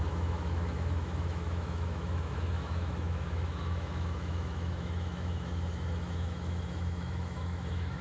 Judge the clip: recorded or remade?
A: remade